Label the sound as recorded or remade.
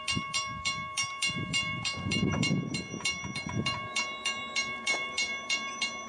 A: remade